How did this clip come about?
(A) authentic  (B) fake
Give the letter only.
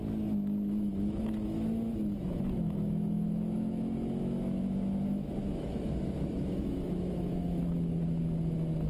B